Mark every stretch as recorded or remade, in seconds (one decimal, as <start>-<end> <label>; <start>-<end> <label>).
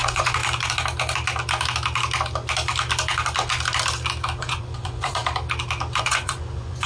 0.0-0.4 remade; 0.4-4.4 recorded; 4.4-5.2 remade; 5.2-6.0 recorded; 6.0-6.9 remade